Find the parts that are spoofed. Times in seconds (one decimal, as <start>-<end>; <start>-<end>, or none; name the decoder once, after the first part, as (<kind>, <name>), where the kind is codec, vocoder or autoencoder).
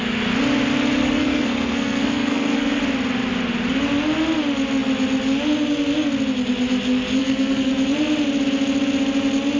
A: 1.0-2.8 (codec, SNAC); 7.2-7.7